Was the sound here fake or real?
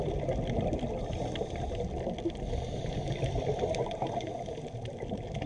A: real